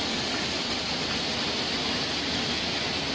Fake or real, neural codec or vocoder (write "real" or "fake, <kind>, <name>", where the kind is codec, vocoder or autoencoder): real